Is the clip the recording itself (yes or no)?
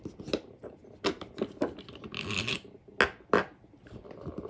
yes